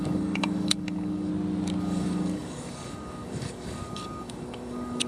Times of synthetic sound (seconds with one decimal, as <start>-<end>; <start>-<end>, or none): 0.0-1.3; 1.8-5.1